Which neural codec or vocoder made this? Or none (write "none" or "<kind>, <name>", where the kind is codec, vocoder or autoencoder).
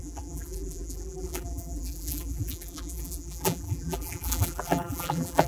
vocoder, BigVGAN v2